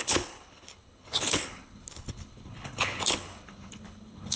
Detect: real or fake fake